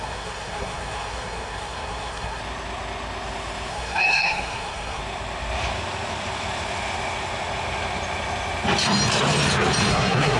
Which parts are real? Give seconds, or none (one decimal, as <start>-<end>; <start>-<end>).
2.4-3.7; 5.0-9.9